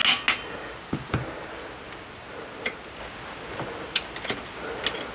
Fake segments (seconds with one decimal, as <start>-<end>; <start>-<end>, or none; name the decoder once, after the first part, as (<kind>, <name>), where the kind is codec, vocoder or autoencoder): none